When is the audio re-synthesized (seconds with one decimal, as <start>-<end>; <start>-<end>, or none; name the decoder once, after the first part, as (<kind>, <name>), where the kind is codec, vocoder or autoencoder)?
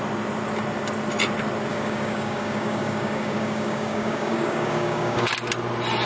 1.7-5.3 (codec, DAC)